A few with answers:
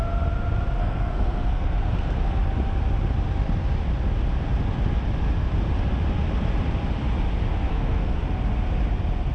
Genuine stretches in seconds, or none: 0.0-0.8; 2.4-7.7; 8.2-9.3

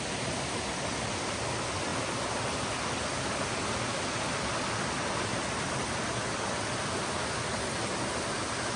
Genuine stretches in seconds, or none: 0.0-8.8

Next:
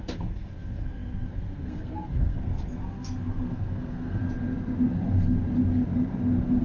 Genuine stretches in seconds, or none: 4.2-6.6

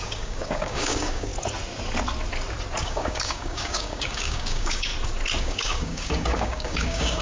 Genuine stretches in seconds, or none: 1.3-2.8; 4.9-5.4